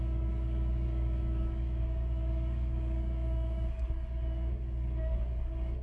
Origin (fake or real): fake